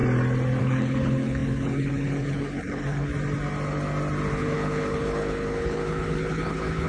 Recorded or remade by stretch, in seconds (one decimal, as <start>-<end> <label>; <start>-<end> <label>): 0.0-0.6 recorded; 0.6-3.1 remade; 3.1-4.3 recorded; 4.3-6.9 remade